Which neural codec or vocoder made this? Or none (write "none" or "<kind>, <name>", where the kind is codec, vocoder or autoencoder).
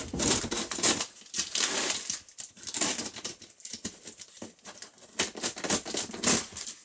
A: vocoder, BigVGAN v2